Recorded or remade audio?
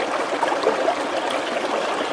recorded